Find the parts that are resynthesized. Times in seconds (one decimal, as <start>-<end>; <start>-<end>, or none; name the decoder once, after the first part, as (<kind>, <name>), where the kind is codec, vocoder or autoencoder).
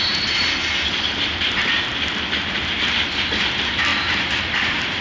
none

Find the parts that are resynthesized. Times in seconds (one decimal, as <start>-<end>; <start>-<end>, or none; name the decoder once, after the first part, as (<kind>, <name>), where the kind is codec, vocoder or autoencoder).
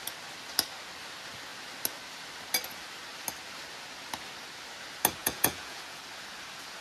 5.2-6.0 (vocoder, Vocos)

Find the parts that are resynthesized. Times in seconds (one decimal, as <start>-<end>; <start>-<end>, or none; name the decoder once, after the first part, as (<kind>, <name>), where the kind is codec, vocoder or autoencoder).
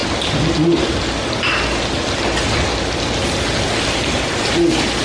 none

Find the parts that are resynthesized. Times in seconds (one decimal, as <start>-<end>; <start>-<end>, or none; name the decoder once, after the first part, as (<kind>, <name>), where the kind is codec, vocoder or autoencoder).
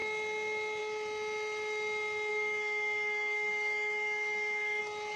2.3-4.8 (codec, DAC)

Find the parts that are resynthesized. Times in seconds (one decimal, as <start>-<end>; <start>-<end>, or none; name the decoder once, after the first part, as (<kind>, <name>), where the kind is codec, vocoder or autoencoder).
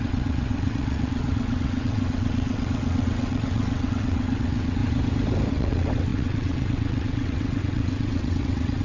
0.0-4.8 (vocoder, WaveNeXt); 5.5-8.8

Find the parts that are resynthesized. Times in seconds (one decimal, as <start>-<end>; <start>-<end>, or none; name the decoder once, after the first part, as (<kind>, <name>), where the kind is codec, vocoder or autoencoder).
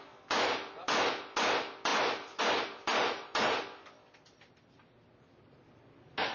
none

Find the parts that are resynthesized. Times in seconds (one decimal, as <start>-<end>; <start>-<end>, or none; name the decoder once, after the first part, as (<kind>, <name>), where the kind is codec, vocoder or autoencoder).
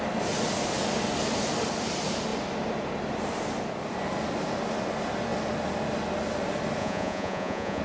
6.8-7.8 (vocoder, Vocos)